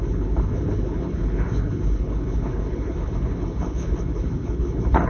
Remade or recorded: remade